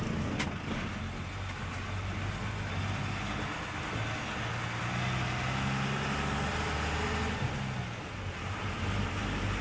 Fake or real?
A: real